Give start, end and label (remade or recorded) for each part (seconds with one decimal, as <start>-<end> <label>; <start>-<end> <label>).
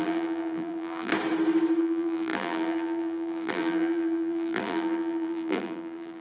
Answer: 0.0-1.1 remade; 1.1-1.8 recorded; 1.8-6.2 remade